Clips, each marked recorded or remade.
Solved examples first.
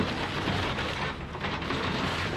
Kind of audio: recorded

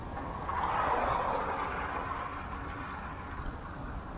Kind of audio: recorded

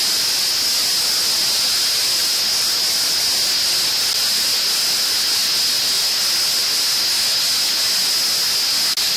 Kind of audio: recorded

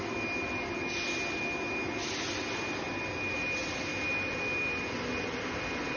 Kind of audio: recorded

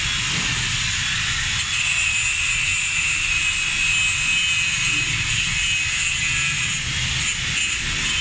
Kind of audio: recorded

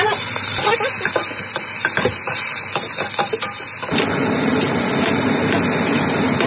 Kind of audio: recorded